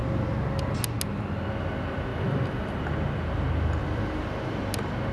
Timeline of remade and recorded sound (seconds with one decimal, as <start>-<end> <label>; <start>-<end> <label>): 0.0-2.1 recorded; 2.1-2.8 remade; 2.8-3.8 recorded; 3.8-4.6 remade; 4.6-5.1 recorded